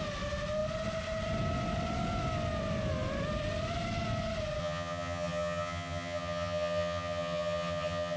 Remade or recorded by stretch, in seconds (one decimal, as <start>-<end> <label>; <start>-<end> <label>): 0.0-4.6 recorded; 4.6-8.2 remade